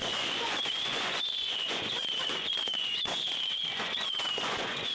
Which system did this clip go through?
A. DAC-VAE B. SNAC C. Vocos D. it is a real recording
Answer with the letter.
C